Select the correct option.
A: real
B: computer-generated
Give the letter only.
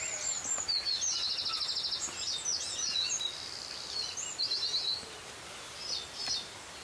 A